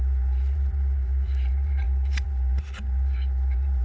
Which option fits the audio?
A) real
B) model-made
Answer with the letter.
B